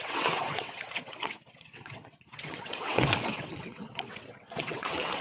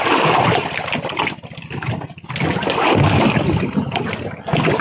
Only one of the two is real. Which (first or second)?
second